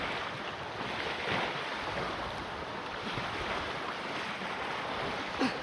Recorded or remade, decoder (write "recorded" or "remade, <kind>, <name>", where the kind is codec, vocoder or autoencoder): recorded